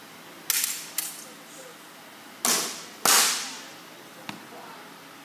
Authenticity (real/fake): real